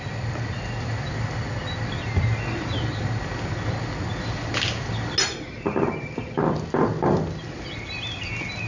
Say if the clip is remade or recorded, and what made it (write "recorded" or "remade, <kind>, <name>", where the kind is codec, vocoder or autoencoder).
recorded